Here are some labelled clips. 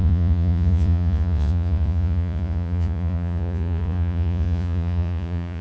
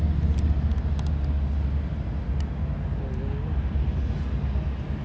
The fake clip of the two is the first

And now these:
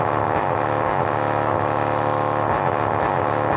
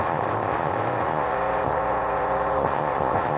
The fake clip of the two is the second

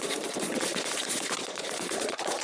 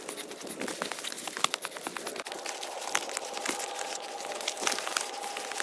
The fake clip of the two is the first